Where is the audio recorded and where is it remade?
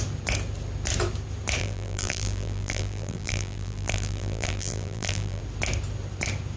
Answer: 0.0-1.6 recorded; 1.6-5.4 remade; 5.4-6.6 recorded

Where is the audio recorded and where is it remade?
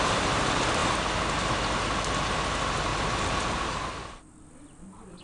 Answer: 0.0-2.9 recorded; 2.9-3.9 remade; 3.9-5.2 recorded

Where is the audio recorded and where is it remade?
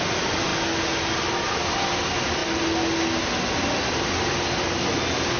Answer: 0.0-5.4 recorded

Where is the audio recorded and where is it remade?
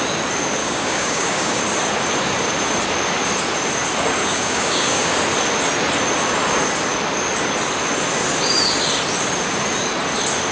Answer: 0.0-0.6 recorded; 0.6-1.6 remade; 1.6-4.2 recorded; 4.2-5.1 remade; 5.1-10.5 recorded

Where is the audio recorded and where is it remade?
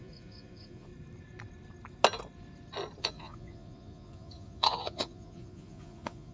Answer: 0.0-0.9 remade; 0.9-3.0 recorded; 3.0-6.3 remade